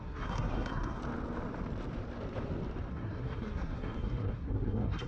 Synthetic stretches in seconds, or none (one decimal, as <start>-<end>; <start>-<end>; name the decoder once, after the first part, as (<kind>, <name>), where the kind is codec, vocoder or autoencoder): 0.0-1.0 (codec, SNAC); 2.9-5.1